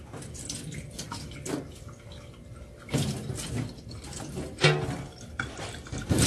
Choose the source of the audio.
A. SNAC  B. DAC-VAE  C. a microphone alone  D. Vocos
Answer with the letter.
C